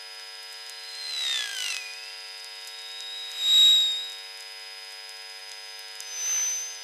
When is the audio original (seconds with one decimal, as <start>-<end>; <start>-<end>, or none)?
0.0-6.8

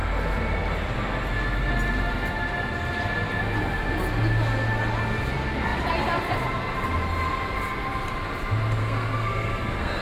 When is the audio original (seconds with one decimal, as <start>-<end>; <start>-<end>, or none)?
0.0-8.8

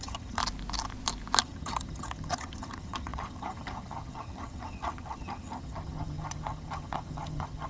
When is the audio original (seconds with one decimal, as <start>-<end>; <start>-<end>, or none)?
0.4-1.4

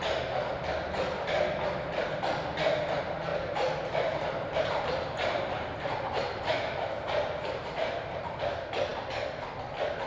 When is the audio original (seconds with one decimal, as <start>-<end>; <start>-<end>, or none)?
0.0-3.3; 8.4-10.1

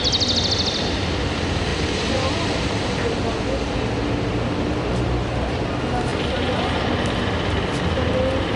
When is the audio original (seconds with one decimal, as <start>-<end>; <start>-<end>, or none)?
0.0-8.6